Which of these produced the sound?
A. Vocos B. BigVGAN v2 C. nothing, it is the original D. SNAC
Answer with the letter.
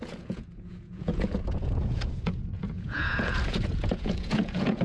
A